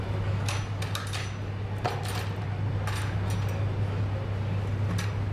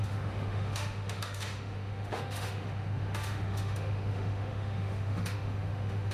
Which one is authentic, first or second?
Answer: first